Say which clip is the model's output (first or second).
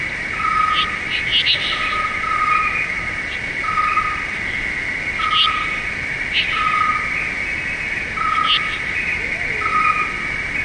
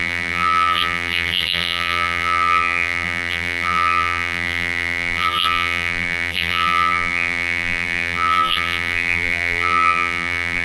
second